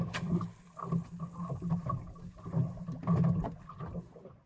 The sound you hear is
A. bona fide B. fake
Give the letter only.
A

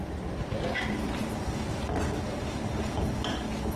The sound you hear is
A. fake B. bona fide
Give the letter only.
B